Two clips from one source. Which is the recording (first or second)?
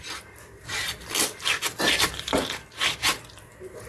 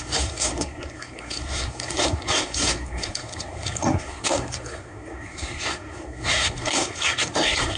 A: first